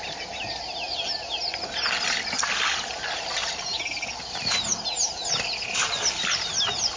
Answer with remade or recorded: recorded